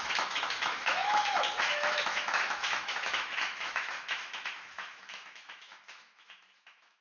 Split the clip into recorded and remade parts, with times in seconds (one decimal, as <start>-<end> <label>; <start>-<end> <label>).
0.0-7.0 remade